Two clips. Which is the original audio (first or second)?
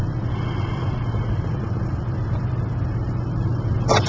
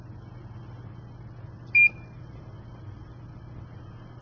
second